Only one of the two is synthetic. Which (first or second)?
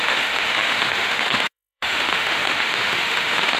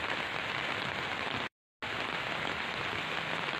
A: first